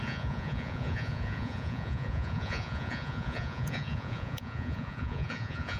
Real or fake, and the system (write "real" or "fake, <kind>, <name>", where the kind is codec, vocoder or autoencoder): fake, vocoder, Vocos